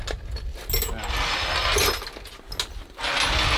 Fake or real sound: real